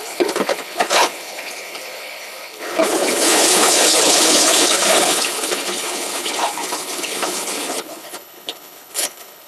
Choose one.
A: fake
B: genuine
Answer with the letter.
A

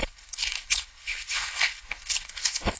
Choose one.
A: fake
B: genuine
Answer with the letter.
A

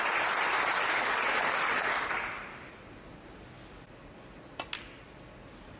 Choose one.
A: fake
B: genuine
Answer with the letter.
B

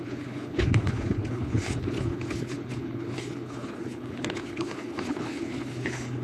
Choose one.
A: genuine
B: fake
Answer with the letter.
B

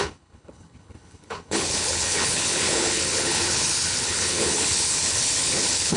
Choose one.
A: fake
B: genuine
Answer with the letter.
A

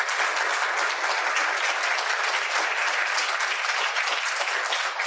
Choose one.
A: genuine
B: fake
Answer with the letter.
A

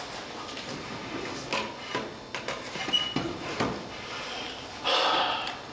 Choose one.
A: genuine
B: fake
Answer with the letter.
A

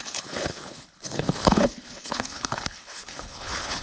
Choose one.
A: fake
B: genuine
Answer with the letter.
A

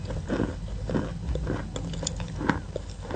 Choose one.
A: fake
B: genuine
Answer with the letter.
B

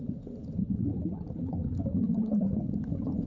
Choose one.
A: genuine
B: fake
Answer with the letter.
B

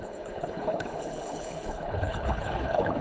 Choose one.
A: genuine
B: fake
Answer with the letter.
B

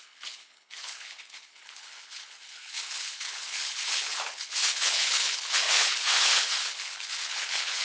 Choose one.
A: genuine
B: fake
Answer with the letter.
B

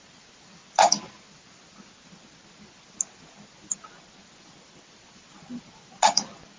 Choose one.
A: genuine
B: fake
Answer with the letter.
A